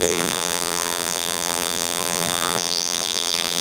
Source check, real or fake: fake